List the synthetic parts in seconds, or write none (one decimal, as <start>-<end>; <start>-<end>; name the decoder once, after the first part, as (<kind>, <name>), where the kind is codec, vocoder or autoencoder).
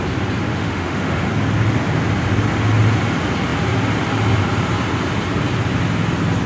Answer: 0.5-1.3 (autoencoder, DAC-VAE)